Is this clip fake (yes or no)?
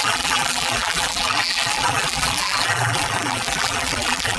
yes